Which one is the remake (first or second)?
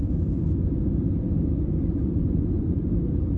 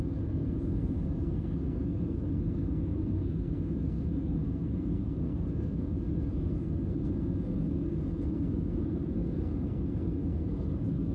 second